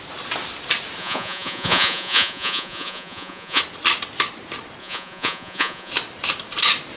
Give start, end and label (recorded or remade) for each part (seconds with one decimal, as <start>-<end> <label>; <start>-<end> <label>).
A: 0.0-1.0 recorded; 1.0-3.6 remade; 3.6-4.8 recorded; 4.8-5.9 remade; 5.9-7.0 recorded